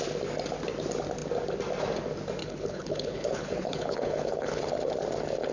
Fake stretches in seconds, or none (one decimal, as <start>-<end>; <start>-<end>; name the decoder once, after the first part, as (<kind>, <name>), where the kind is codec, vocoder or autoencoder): 2.4-4.6 (codec, HILCodec)